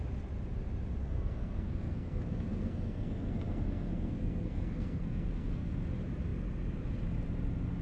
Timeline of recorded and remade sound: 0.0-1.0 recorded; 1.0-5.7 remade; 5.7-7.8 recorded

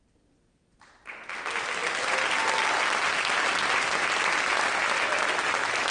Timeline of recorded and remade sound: 0.0-5.9 recorded

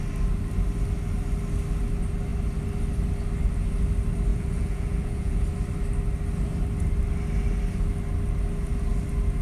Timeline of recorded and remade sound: 0.0-4.3 recorded; 4.3-5.4 remade; 5.4-9.4 recorded

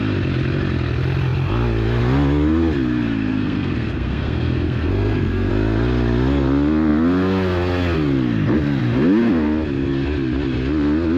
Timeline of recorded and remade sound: 0.0-3.3 recorded; 3.3-5.5 remade; 5.5-11.2 recorded

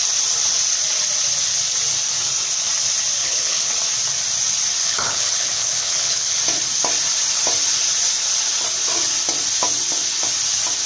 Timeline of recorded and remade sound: 0.0-3.2 recorded; 3.2-3.7 remade; 3.7-4.8 recorded; 4.8-6.4 remade; 6.4-10.9 recorded

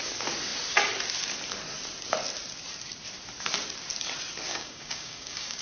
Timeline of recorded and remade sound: 0.0-4.5 recorded; 4.5-5.6 remade

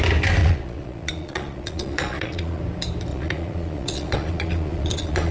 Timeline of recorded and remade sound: 0.0-0.4 recorded; 0.4-2.6 remade; 2.6-3.1 recorded; 3.1-5.3 remade

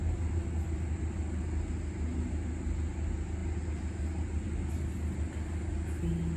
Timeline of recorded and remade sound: 0.0-6.4 recorded